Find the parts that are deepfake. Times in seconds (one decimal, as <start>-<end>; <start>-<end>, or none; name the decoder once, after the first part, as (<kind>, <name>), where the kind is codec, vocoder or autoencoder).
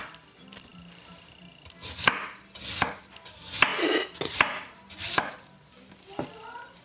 3.7-5.5 (vocoder, BigVGAN v2)